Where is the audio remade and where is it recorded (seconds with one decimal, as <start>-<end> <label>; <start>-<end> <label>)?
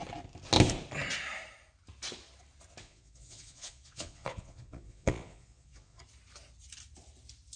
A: 0.0-2.8 recorded; 2.8-6.0 remade; 6.0-7.6 recorded